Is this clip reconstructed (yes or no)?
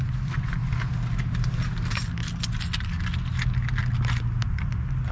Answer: no